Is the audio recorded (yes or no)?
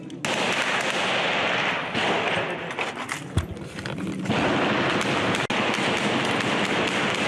yes